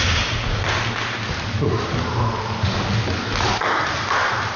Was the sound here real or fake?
real